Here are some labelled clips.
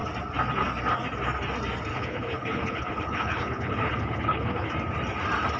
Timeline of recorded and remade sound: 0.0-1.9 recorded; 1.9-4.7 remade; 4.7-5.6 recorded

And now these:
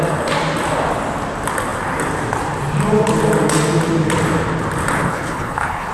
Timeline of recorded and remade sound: 0.0-5.0 recorded; 5.0-5.9 remade

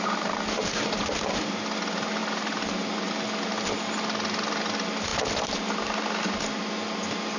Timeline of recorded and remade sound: 0.0-7.4 recorded

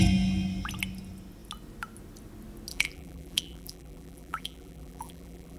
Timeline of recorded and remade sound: 0.0-2.7 recorded; 2.7-5.6 remade

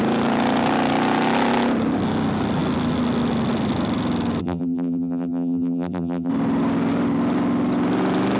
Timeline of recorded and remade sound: 0.0-4.4 recorded; 4.4-6.3 remade; 6.3-8.4 recorded

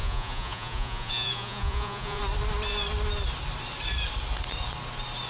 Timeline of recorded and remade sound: 0.0-2.2 remade; 2.2-5.3 recorded